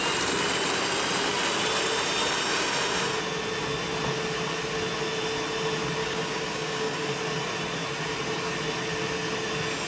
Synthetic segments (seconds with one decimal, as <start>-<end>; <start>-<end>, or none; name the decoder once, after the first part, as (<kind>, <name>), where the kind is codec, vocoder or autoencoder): 6.0-7.1 (codec, DAC)